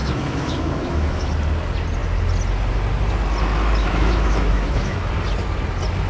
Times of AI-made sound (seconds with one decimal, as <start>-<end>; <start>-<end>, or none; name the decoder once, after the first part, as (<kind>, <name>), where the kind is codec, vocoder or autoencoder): 0.0-1.3 (autoencoder, DAC-VAE); 3.8-5.1